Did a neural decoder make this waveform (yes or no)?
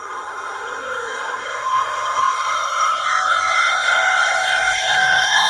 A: yes